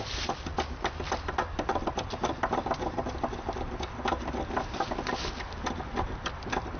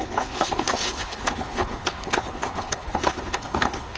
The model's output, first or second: second